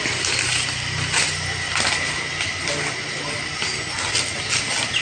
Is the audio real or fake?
real